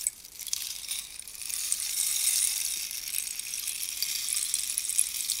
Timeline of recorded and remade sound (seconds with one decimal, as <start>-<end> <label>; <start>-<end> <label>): 0.0-2.1 remade; 2.1-5.4 recorded